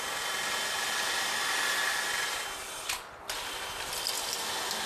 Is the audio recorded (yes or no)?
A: yes